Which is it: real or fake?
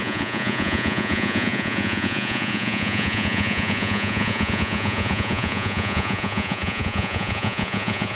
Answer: fake